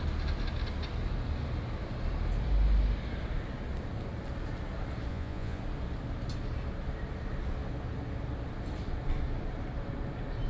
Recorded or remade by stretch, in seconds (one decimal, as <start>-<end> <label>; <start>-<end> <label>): 0.0-5.1 recorded; 5.1-5.6 remade; 5.6-10.5 recorded